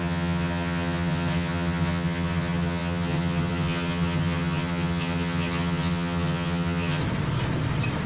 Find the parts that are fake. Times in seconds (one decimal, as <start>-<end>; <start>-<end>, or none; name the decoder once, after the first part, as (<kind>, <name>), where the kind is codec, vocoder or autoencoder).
0.0-7.0 (vocoder, HiFi-GAN)